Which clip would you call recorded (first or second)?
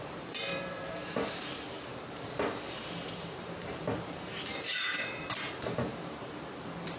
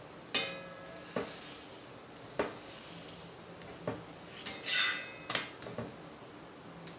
second